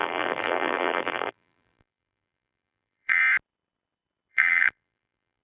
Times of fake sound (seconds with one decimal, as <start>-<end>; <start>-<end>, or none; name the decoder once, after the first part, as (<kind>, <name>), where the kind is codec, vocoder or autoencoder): 0.0-3.2 (vocoder, BigVGAN v2); 4.3-5.4

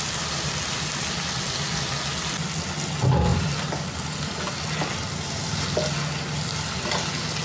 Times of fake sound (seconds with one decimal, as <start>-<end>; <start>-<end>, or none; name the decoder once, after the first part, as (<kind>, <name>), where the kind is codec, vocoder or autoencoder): 3.3-4.4 (vocoder, BigVGAN v2)

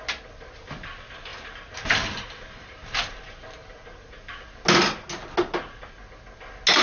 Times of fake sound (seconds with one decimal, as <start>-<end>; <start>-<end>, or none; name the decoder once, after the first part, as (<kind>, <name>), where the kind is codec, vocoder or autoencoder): 1.3-4.3 (vocoder, BigVGAN v2)

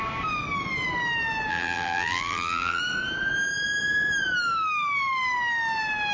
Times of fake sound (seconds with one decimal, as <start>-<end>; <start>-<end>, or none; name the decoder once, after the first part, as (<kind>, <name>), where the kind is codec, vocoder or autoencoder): 1.5-2.8 (vocoder, BigVGAN v2)

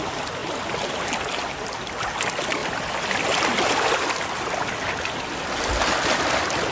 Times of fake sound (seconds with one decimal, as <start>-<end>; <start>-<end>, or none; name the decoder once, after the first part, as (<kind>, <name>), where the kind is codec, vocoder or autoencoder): none

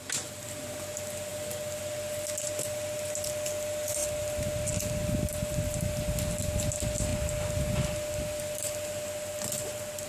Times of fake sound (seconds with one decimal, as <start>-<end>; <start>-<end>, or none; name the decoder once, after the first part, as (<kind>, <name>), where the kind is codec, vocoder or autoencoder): none